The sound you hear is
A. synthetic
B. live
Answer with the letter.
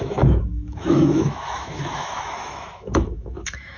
A